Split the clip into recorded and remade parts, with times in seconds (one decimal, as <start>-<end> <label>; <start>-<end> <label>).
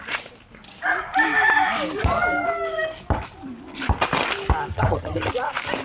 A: 0.0-4.7 recorded; 4.7-5.3 remade; 5.3-5.8 recorded